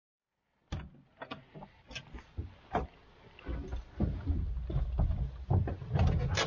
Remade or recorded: recorded